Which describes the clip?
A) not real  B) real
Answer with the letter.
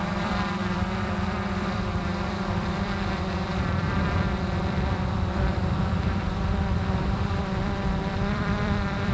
A